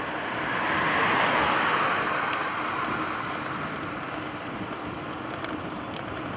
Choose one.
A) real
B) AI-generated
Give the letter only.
A